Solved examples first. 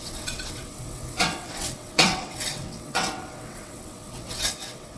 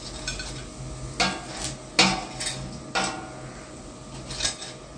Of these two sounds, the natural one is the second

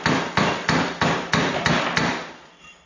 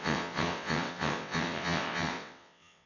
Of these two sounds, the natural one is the first